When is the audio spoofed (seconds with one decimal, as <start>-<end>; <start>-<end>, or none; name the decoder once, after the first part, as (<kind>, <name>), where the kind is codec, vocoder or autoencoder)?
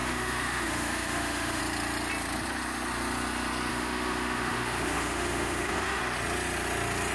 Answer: 0.0-1.6 (autoencoder, DAC-VAE); 3.7-6.0